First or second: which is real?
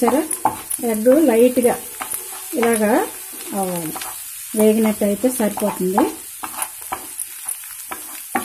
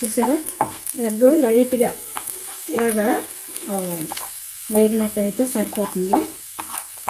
first